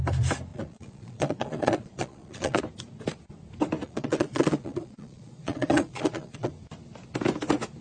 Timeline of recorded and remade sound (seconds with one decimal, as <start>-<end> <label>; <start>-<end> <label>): 0.0-0.5 recorded; 0.5-2.6 remade; 2.6-3.8 recorded; 3.8-6.5 remade; 6.5-7.8 recorded